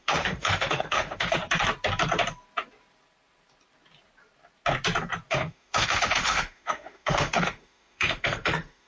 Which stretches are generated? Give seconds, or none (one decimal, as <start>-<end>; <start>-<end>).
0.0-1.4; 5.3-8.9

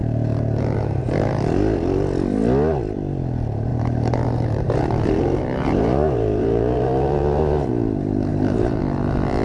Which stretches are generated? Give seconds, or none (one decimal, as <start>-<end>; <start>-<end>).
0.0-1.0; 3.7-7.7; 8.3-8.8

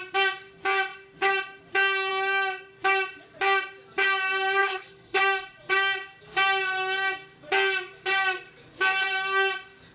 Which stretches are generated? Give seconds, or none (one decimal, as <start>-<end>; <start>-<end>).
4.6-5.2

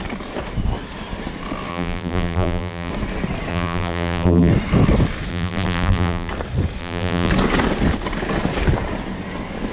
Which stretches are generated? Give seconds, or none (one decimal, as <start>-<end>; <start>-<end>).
1.7-2.9; 3.5-4.5; 5.3-6.3; 6.8-7.3